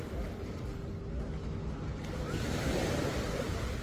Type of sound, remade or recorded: recorded